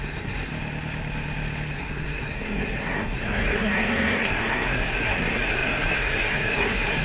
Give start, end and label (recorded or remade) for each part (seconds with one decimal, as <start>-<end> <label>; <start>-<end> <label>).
0.0-0.5 remade; 0.5-1.7 recorded; 1.7-7.0 remade